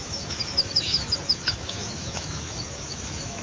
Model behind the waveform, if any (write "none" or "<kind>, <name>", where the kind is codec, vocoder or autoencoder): autoencoder, DAC-VAE